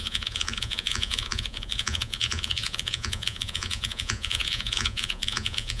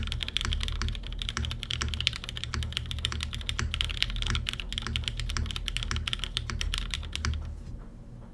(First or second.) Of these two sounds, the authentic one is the second